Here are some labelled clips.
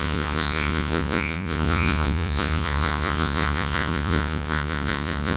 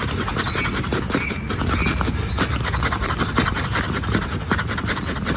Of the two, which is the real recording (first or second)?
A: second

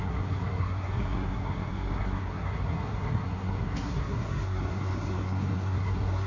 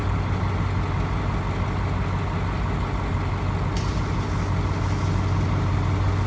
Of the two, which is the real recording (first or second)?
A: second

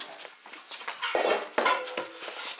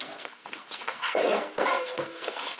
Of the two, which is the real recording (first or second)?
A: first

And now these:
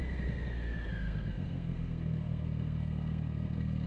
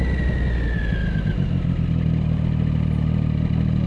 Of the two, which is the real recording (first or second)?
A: second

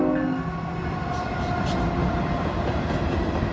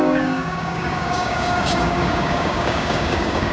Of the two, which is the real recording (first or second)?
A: first